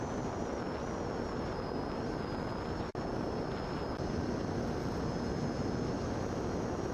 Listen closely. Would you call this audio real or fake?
real